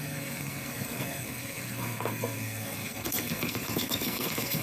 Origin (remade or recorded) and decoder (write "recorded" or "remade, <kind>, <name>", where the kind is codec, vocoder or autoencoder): remade, codec, SNAC